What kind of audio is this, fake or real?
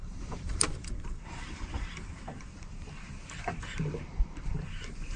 fake